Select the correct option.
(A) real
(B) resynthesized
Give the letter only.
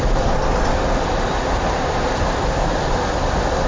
A